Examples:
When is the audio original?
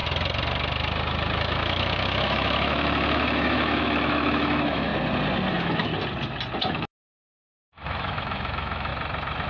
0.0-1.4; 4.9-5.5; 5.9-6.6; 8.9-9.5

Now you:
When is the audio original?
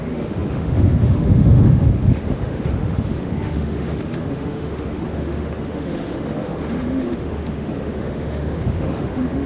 none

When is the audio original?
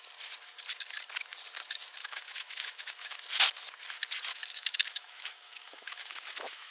0.0-2.0; 3.2-4.3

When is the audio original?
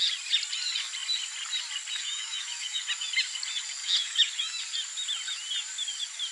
0.0-2.0; 2.8-3.8; 4.6-6.3